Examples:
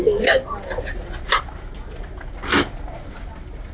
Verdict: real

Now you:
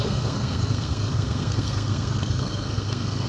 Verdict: fake